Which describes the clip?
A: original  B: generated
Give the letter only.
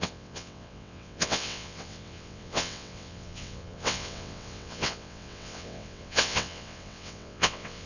B